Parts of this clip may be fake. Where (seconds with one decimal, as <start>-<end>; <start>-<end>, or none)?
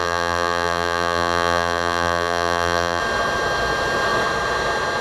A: 0.0-3.0